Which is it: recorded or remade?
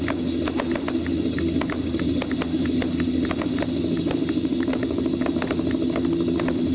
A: recorded